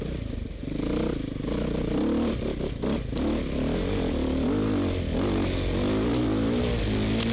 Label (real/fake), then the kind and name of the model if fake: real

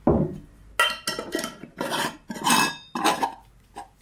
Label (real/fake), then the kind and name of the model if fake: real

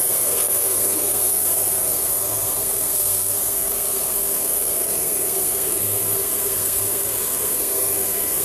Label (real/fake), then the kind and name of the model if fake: fake, codec, SNAC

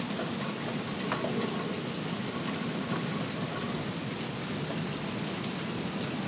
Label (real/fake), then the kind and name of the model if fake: real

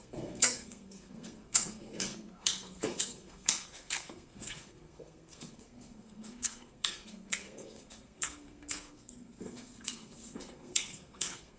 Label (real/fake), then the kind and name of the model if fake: fake, codec, SNAC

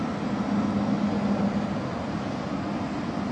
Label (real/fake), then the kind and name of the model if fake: real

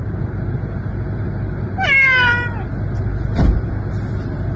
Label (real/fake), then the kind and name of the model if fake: real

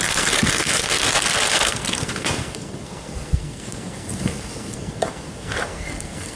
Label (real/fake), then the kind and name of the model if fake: fake, codec, SNAC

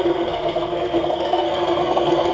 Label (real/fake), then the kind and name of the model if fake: fake, codec, SNAC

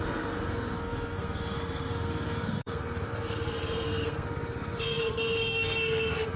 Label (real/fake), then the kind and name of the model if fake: fake, codec, SNAC